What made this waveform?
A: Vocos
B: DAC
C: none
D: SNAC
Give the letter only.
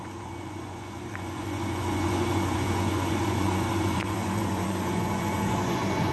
A